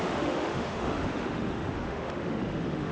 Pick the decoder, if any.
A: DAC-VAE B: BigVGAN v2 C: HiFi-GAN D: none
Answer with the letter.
A